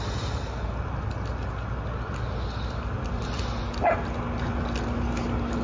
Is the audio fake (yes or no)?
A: no